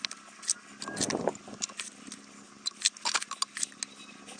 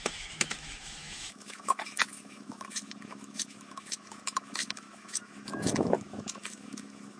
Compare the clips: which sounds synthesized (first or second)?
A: second